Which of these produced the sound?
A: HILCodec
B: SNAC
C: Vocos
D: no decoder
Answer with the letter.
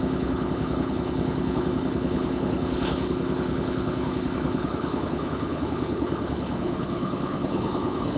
A